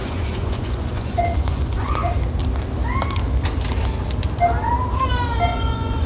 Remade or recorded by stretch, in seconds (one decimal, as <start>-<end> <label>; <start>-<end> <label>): 0.0-2.1 remade; 2.1-5.5 recorded; 5.5-6.1 remade